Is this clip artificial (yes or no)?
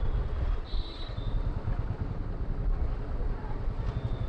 no